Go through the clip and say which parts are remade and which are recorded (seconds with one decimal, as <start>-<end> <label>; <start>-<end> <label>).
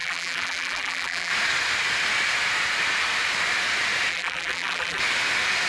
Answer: 0.0-1.3 remade; 1.3-4.1 recorded; 4.1-5.0 remade; 5.0-5.7 recorded